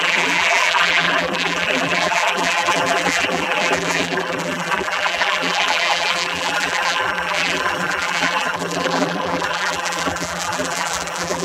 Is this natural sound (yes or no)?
no